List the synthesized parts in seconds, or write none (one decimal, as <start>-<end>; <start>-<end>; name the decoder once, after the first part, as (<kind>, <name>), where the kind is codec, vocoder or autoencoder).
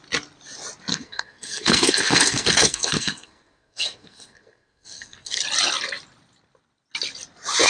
0.9-5.4 (codec, SNAC)